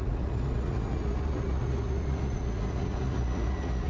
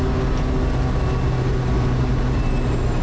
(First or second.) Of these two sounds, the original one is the second